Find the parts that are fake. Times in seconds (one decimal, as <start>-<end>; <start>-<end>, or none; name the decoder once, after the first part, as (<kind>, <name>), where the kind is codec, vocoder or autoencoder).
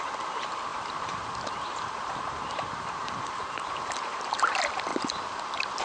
0.0-4.9 (vocoder, BigVGAN v2)